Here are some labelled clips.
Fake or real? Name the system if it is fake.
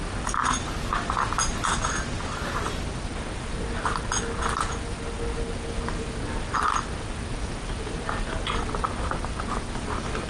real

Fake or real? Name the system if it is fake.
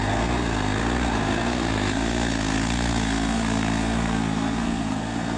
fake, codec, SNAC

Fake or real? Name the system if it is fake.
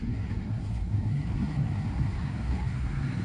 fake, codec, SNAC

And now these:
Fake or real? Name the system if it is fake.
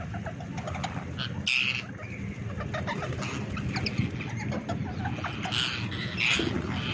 real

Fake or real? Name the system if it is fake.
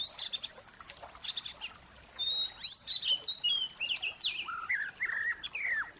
real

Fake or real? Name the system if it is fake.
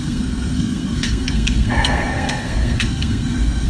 fake, codec, SNAC